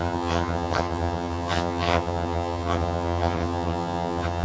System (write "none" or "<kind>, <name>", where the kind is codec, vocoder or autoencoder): vocoder, HiFi-GAN